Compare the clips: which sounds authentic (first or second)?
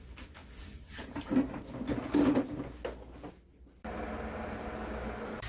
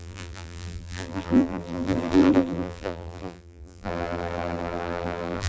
first